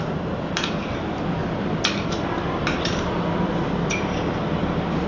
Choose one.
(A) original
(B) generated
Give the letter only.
A